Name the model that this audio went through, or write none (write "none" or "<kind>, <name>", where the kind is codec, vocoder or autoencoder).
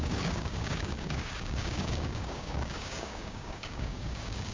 codec, DAC